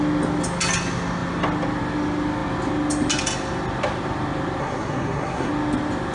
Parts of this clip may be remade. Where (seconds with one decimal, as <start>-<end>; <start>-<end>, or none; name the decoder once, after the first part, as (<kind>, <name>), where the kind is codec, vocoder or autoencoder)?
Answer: 4.6-5.5 (codec, SNAC)